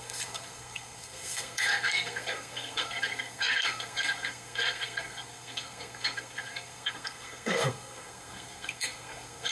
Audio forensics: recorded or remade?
remade